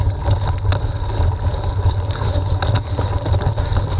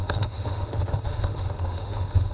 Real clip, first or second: first